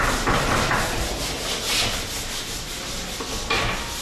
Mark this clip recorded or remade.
recorded